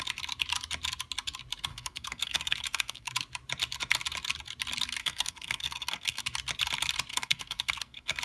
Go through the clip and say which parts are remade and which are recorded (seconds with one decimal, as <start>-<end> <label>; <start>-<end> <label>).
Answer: 0.0-1.7 recorded; 1.7-3.1 remade; 3.1-5.0 recorded; 5.0-6.2 remade; 6.2-7.1 recorded; 7.1-8.2 remade